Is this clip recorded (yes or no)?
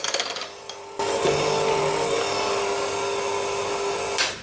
yes